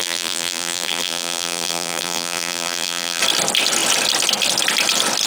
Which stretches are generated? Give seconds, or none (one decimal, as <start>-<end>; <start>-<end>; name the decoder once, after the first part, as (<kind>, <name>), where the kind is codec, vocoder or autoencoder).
0.0-3.2 (vocoder, BigVGAN v2)